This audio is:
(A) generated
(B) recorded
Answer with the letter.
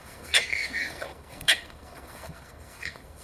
A